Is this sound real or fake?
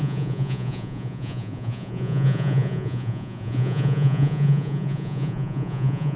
fake